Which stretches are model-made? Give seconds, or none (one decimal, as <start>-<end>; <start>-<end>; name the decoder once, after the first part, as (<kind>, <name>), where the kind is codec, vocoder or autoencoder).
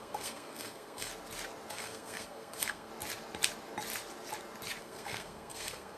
0.0-1.1 (codec, SNAC); 1.7-2.9; 4.8-6.0